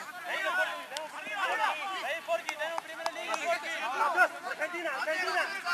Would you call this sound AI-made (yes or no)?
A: no